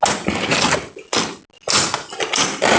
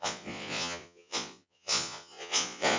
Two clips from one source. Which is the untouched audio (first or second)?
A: first